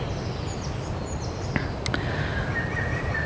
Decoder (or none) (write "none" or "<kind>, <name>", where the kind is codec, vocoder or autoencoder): none